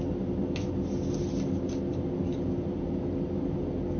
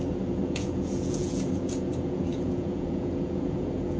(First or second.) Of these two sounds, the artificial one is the second